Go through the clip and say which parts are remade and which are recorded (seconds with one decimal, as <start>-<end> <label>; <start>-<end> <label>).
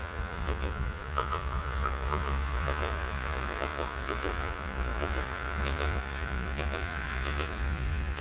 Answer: 0.0-8.2 remade